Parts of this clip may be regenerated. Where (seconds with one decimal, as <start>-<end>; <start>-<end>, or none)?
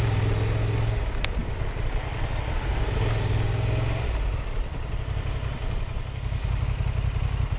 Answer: none